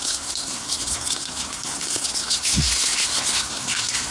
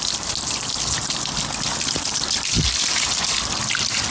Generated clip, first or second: first